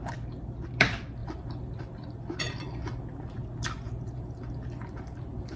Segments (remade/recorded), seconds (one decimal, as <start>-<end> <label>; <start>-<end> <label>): 0.0-5.6 recorded